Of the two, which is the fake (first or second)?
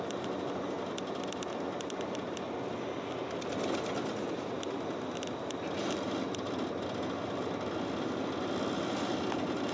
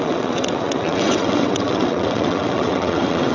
second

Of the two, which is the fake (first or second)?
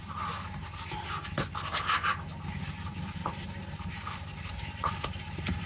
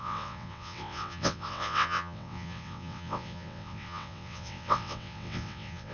second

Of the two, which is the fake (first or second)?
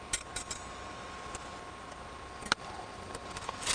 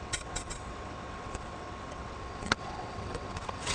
second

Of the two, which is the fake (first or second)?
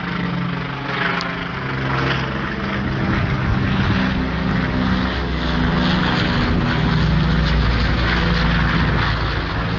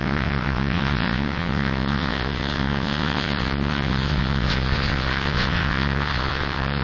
second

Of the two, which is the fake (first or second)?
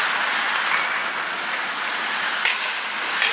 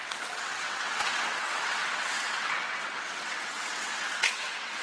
second